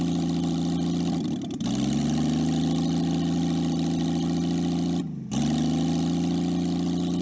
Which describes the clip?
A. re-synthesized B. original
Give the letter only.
B